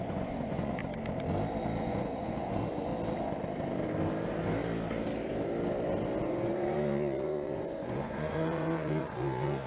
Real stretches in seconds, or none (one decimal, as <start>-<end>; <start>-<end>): 0.8-1.8; 2.9-6.2